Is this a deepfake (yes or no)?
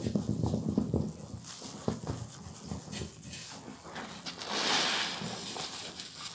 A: no